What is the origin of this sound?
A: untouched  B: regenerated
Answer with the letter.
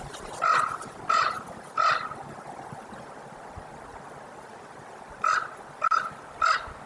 A